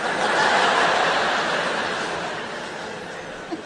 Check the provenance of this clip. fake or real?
real